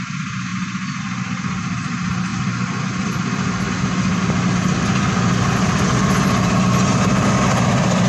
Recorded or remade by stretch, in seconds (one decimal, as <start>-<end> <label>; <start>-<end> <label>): 0.0-8.1 recorded